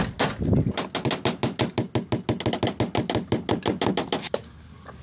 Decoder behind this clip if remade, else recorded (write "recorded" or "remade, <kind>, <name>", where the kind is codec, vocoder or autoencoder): recorded